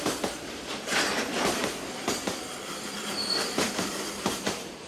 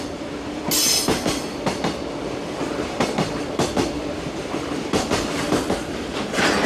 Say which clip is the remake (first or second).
first